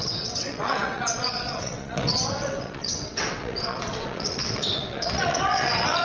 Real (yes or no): no